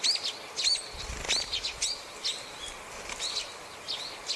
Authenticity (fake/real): real